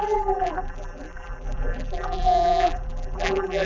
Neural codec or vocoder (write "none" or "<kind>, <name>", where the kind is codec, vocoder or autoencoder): vocoder, BigVGAN v2